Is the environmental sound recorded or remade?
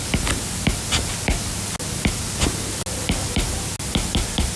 recorded